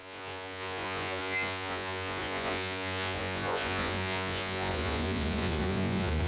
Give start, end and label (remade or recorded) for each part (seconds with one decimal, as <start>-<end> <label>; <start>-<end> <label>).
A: 0.0-6.3 remade